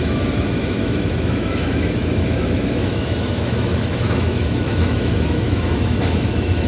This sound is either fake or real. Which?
fake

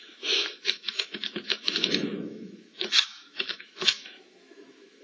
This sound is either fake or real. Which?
fake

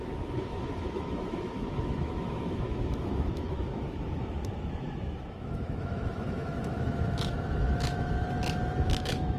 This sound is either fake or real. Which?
fake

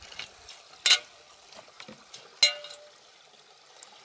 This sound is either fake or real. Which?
real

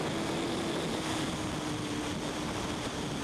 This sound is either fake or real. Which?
real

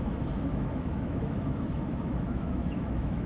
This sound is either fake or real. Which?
fake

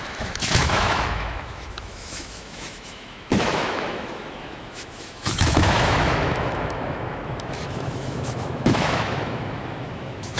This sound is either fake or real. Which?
fake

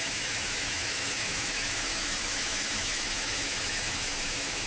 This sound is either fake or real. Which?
fake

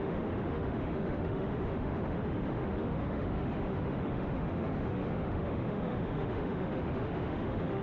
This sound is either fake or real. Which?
fake